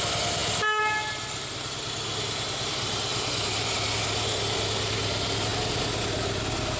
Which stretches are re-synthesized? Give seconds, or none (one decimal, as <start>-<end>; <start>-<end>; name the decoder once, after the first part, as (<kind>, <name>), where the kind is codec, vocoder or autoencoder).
none